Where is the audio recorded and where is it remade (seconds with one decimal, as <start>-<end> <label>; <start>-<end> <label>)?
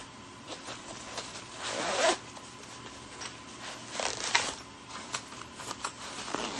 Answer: 0.0-6.6 recorded